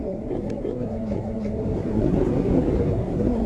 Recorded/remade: remade